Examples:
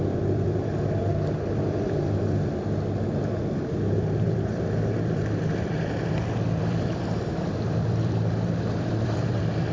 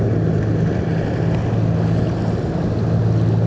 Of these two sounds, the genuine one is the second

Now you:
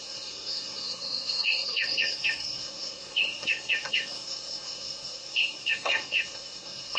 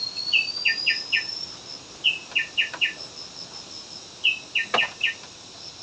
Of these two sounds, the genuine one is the second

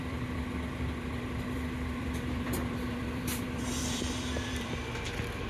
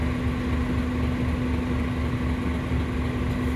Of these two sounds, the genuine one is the second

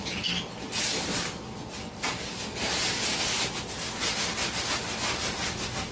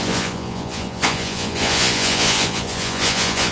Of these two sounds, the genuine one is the first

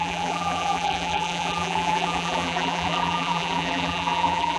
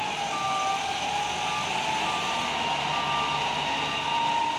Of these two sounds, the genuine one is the second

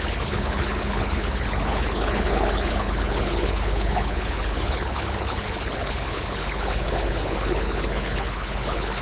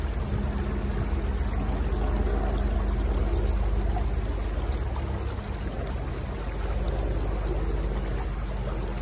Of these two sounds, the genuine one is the second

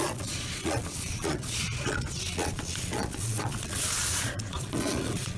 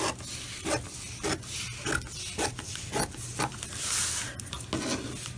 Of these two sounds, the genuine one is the second